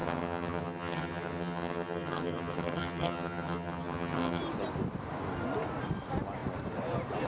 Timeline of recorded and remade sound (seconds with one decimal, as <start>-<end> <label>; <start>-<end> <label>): 0.0-4.4 remade; 4.4-7.3 recorded